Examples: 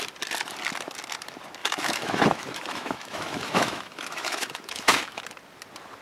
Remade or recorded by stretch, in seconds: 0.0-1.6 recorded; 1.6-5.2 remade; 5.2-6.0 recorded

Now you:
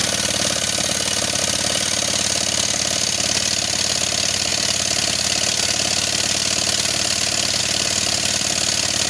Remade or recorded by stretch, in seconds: 0.0-9.1 recorded